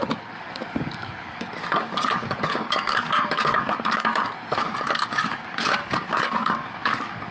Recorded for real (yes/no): no